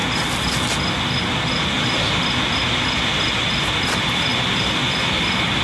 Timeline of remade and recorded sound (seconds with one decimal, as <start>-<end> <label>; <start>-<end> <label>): 0.0-5.6 recorded